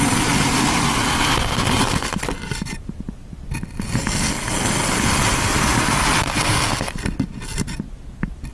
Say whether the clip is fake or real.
real